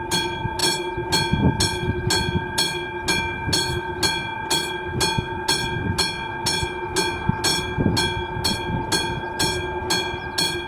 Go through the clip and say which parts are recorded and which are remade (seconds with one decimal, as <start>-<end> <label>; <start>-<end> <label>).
0.0-10.7 recorded